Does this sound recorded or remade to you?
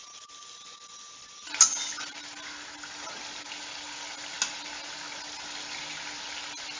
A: recorded